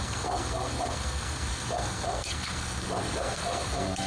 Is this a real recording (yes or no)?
no